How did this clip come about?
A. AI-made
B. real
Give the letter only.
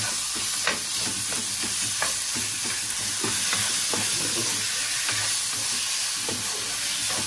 B